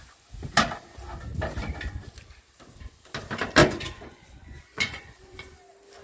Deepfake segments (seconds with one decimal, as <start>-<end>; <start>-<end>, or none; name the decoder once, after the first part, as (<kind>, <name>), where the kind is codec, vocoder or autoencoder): 3.6-5.6 (vocoder, Vocos)